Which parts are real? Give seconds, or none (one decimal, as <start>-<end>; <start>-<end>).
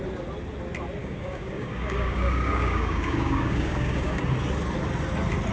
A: 0.0-1.0; 4.2-5.5